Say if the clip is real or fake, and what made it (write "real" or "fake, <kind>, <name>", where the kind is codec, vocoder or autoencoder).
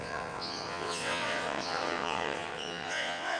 fake, vocoder, WaveNeXt